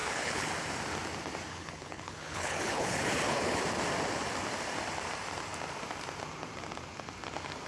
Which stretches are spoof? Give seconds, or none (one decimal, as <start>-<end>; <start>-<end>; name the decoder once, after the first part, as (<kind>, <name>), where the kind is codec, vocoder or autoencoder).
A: 0.0-0.5 (codec, HILCodec); 1.5-3.6